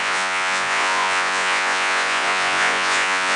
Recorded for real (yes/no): no